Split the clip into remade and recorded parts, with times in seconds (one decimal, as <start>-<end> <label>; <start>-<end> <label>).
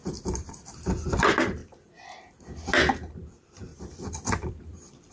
0.0-0.5 recorded; 0.5-1.6 remade; 1.6-3.1 recorded; 3.1-3.7 remade; 3.7-4.5 recorded; 4.5-5.1 remade